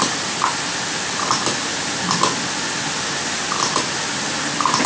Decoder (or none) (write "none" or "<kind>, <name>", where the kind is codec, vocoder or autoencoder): none